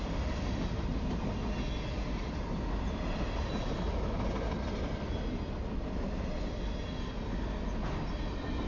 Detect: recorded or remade recorded